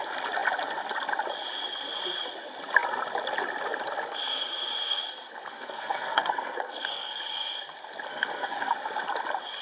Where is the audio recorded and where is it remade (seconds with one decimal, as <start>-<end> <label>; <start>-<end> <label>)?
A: 0.0-5.5 recorded; 5.5-7.2 remade; 7.2-8.1 recorded; 8.1-8.7 remade; 8.7-9.6 recorded